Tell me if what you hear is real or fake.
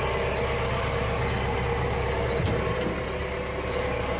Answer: real